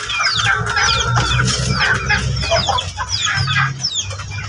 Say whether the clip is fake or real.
real